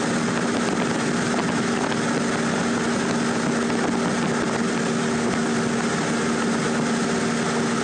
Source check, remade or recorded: recorded